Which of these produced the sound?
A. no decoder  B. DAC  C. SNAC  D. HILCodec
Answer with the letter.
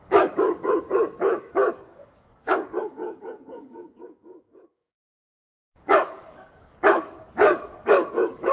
B